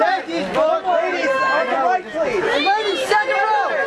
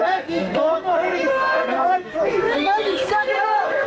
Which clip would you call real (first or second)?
first